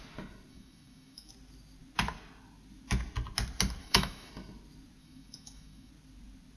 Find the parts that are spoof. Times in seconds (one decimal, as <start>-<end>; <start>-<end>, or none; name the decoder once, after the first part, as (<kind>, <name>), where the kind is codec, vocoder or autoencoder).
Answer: 0.5-1.3 (autoencoder, DAC-VAE); 3.8-4.3; 5.0-5.9